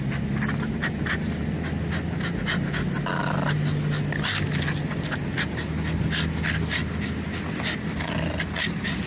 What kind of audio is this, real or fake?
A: real